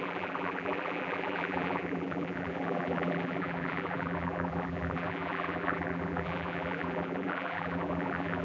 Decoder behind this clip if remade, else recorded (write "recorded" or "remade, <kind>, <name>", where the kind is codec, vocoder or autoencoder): remade, vocoder, BigVGAN v2